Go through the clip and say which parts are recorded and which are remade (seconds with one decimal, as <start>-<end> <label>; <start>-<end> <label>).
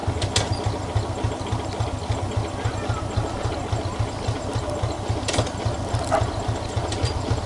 0.0-7.5 recorded